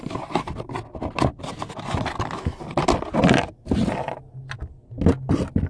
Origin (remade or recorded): recorded